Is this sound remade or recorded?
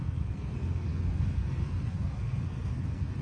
remade